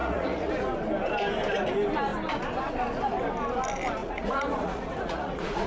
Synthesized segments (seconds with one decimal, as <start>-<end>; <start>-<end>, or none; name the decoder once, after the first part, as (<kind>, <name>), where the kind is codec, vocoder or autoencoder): 0.0-0.5 (vocoder, Vocos); 4.0-5.7